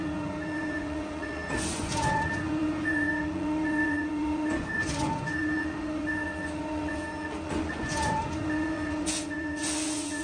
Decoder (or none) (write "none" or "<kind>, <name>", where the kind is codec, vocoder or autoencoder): vocoder, Vocos